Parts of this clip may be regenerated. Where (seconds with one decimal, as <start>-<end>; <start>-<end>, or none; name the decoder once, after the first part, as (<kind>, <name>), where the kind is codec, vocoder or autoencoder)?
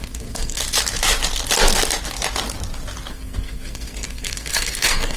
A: 0.0-0.6 (codec, SNAC); 3.1-5.2